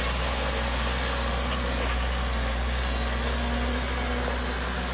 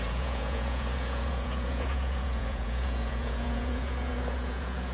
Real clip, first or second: first